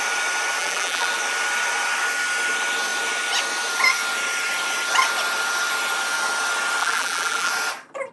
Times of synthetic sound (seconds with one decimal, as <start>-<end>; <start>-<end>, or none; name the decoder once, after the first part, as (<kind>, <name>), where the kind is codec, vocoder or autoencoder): 0.6-1.1 (vocoder, BigVGAN v2); 6.8-7.5

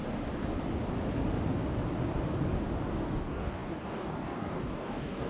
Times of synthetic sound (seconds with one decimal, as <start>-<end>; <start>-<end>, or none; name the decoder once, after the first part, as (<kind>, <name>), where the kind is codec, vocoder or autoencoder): 3.0-5.3 (codec, DAC)

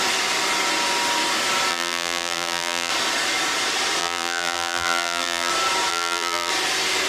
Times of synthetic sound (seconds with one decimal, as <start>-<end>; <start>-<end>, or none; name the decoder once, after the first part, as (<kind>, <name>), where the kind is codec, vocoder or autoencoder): 1.7-2.9 (vocoder, BigVGAN v2); 4.0-5.5; 5.9-6.5

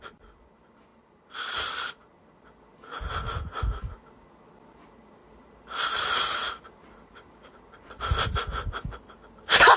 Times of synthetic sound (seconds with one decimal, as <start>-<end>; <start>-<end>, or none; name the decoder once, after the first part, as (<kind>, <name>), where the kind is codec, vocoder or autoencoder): 0.9-1.9 (vocoder, BigVGAN v2); 5.2-7.9

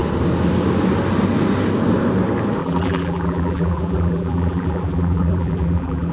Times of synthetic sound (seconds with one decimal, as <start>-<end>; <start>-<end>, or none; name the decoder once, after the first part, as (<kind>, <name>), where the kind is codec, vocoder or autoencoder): 2.6-6.1 (vocoder, BigVGAN v2)

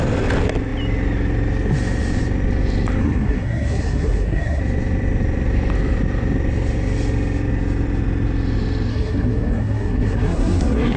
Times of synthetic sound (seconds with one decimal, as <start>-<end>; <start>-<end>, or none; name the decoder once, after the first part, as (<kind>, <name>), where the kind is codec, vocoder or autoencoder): 3.0-4.6 (codec, SNAC); 8.9-11.0

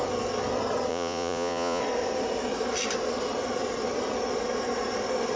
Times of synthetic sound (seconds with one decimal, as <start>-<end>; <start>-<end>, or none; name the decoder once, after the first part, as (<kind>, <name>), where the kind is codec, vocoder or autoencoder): 0.9-1.8 (vocoder, Vocos)

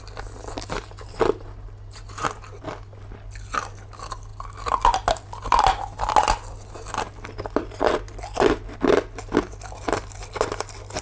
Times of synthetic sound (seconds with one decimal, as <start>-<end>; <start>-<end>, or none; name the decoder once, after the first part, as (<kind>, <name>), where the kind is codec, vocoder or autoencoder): none